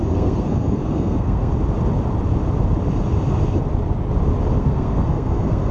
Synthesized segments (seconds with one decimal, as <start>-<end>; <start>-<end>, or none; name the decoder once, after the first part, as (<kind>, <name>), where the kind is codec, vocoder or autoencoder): 0.0-1.5 (codec, SNAC); 4.6-5.7